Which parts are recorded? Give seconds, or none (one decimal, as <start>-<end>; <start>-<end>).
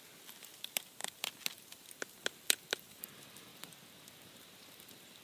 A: 0.0-5.2